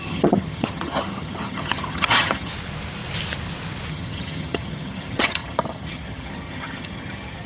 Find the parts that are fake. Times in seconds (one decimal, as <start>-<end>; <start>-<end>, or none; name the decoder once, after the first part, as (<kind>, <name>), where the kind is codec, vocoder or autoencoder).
0.0-2.5 (vocoder, HiFi-GAN); 3.9-7.5